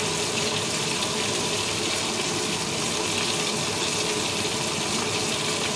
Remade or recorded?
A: recorded